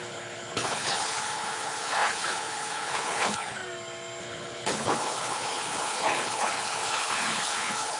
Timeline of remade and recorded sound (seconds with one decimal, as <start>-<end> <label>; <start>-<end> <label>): 0.0-3.6 remade; 3.6-4.2 recorded; 4.2-8.0 remade